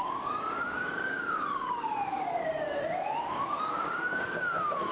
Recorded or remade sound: remade